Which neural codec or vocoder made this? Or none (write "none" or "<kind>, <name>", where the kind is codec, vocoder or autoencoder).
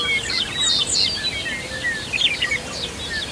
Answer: none